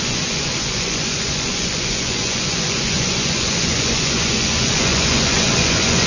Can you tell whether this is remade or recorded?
remade